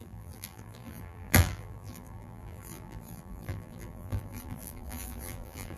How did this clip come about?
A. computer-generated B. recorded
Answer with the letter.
A